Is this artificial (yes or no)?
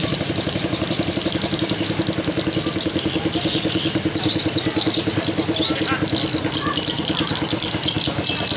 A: yes